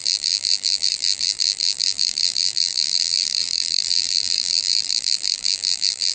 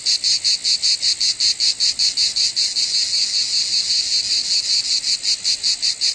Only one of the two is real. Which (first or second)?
second